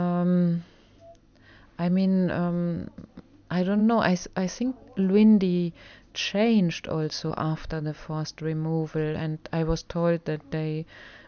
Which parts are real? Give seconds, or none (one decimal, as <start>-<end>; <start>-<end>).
0.0-11.3